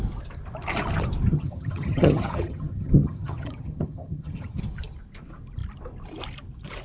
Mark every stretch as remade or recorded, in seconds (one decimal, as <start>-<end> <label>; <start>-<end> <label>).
0.0-1.3 recorded; 1.3-4.6 remade; 4.6-6.8 recorded